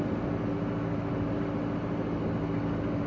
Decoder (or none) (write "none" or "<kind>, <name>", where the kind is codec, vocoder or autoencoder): none